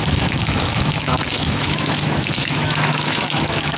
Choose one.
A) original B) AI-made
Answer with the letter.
B